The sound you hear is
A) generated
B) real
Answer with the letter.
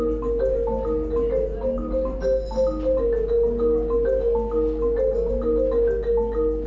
B